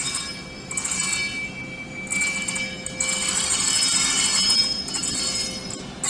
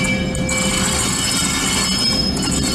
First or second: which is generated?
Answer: second